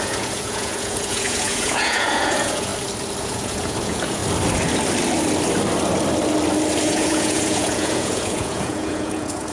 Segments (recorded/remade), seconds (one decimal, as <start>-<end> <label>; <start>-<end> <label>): 0.0-2.7 remade; 2.7-3.2 recorded; 3.2-4.2 remade; 4.2-6.8 recorded; 6.8-9.5 remade

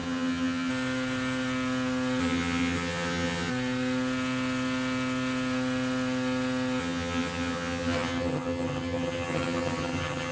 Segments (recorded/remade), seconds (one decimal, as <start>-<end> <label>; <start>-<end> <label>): 0.0-0.7 remade; 0.7-2.2 recorded; 2.2-3.5 remade; 3.5-6.8 recorded; 6.8-10.3 remade